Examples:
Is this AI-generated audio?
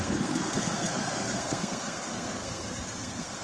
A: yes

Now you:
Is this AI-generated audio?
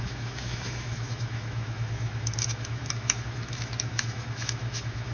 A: yes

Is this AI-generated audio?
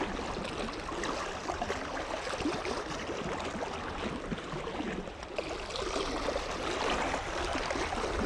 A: no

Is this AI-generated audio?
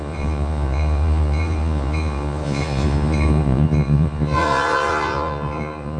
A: yes